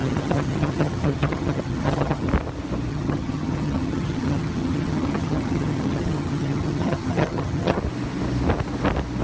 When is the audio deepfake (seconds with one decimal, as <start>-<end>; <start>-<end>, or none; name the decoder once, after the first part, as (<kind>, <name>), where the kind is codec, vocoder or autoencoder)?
0.0-2.3 (vocoder, HiFi-GAN); 2.9-7.8